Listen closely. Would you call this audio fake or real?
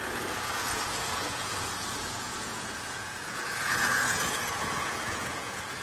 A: fake